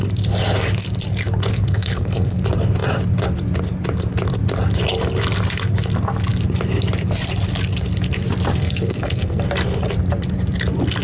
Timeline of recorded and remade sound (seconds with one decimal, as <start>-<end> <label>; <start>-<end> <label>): 0.0-1.5 recorded; 1.5-2.4 remade; 2.4-8.5 recorded; 8.5-9.4 remade; 9.4-11.0 recorded